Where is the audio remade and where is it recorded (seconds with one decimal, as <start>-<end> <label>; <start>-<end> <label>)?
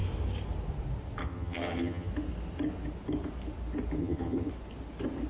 0.0-1.2 recorded; 1.2-2.1 remade; 2.1-4.0 recorded; 4.0-4.5 remade; 4.5-5.3 recorded